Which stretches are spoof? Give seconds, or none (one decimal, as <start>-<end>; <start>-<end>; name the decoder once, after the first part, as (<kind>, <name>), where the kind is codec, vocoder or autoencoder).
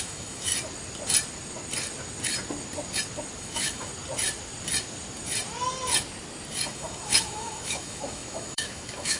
0.0-0.5 (autoencoder, DAC-VAE); 3.4-3.9; 6.7-9.2